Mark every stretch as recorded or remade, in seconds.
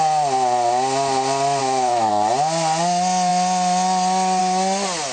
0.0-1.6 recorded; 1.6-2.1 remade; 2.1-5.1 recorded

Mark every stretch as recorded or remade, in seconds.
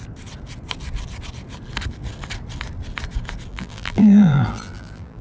0.0-3.5 recorded; 3.5-5.2 remade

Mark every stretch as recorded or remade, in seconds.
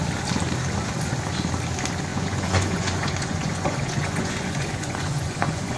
0.0-2.1 recorded; 2.1-5.8 remade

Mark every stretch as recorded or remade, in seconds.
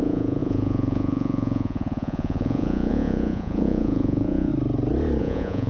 0.0-4.5 remade; 4.5-5.2 recorded; 5.2-5.7 remade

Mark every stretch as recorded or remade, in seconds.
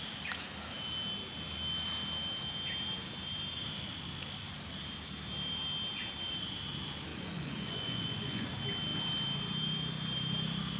0.0-7.1 recorded; 7.1-8.5 remade; 8.5-10.8 recorded